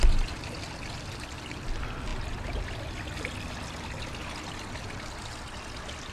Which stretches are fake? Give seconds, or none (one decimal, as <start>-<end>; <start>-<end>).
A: none